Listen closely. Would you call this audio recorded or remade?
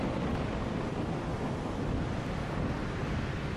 recorded